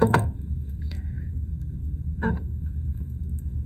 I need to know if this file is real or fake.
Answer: fake